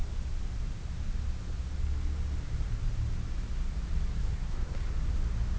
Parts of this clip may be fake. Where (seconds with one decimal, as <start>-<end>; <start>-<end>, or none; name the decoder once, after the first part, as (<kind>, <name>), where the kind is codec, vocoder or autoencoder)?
4.2-4.9 (codec, SNAC)